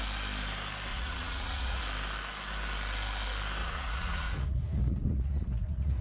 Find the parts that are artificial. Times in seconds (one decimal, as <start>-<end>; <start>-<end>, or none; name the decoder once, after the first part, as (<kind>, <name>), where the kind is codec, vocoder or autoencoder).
0.9-1.8 (vocoder, Vocos); 3.6-6.0